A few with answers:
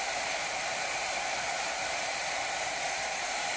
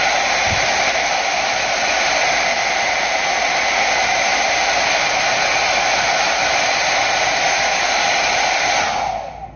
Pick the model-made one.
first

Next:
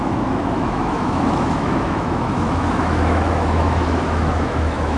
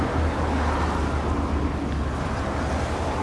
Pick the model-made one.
first